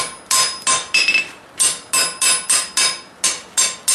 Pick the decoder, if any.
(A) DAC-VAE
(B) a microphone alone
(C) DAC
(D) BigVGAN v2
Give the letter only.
B